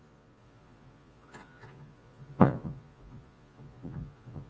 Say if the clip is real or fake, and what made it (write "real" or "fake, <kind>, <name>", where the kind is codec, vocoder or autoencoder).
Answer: fake, vocoder, Vocos